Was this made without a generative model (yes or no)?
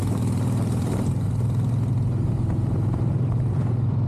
no